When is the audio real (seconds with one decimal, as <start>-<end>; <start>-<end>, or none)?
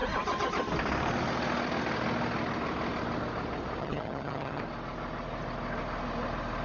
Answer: 0.0-3.8; 4.6-6.6